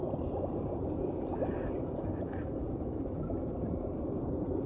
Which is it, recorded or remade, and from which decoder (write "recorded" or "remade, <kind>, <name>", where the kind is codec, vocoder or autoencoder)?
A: remade, vocoder, BigVGAN v2